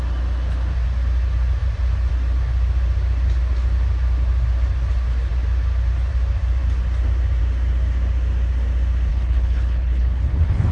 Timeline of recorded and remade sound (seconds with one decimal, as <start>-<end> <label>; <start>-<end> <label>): 0.0-9.1 recorded; 9.1-10.7 remade